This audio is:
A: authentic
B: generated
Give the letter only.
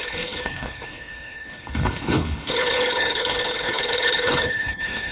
B